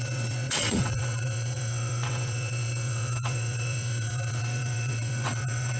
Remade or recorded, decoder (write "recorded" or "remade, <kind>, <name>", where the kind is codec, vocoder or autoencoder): remade, vocoder, WaveNeXt